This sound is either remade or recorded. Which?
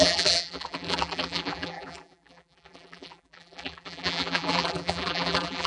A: remade